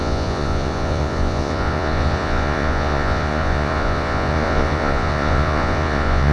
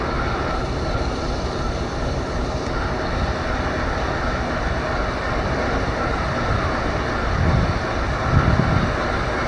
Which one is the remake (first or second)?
first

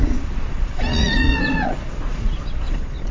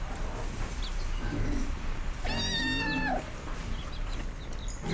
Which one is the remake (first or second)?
first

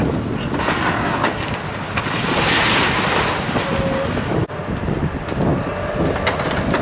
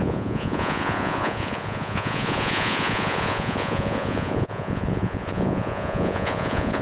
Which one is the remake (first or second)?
second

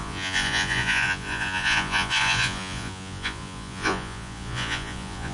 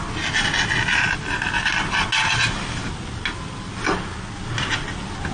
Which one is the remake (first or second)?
first